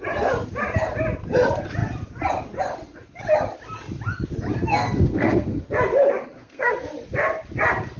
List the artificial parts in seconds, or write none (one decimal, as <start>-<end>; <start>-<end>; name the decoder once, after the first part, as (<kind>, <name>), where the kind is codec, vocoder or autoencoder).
4.7-5.6 (codec, SNAC); 6.4-6.9